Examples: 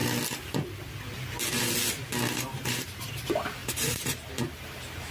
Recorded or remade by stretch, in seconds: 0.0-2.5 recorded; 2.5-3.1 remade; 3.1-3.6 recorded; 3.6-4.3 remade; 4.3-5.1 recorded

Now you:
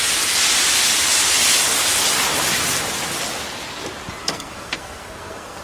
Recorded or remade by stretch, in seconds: 0.0-4.2 recorded; 4.2-5.6 remade

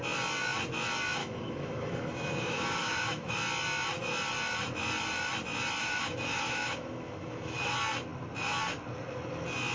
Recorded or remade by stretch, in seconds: 0.0-1.2 recorded; 1.2-3.3 remade; 3.3-5.8 recorded; 5.8-7.7 remade; 7.7-9.7 recorded

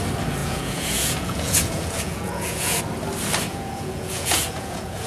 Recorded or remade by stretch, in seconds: 0.0-0.4 recorded; 0.4-2.8 remade; 2.8-3.5 recorded; 3.5-5.1 remade

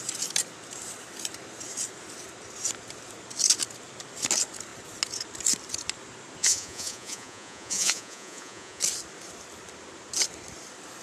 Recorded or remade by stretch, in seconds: 0.0-6.4 recorded; 6.4-8.8 remade; 8.8-11.0 recorded

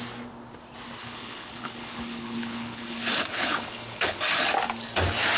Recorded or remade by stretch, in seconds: 0.0-1.0 recorded; 1.0-4.2 remade; 4.2-5.4 recorded

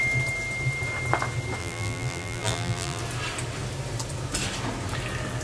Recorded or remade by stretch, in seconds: 0.0-1.6 recorded; 1.6-3.0 remade; 3.0-5.4 recorded